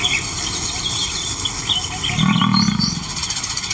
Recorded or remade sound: recorded